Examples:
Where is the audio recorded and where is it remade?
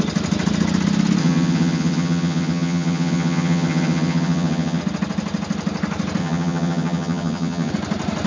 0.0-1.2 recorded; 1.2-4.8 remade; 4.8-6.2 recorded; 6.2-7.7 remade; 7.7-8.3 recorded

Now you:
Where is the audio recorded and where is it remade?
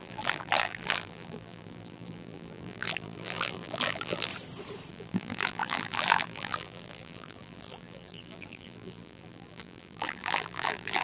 0.0-4.3 remade; 4.3-4.9 recorded; 4.9-11.0 remade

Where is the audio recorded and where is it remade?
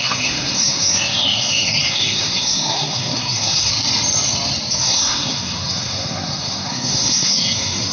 0.0-3.7 remade; 3.7-4.8 recorded; 4.8-7.9 remade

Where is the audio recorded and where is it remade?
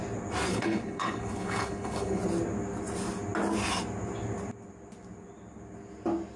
0.0-0.5 recorded; 0.5-2.2 remade; 2.2-6.4 recorded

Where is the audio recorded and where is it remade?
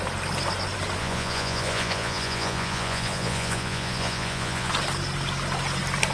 0.0-1.0 recorded; 1.0-4.7 remade; 4.7-6.1 recorded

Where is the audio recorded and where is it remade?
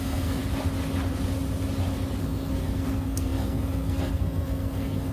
0.0-0.4 remade; 0.4-2.2 recorded; 2.2-5.1 remade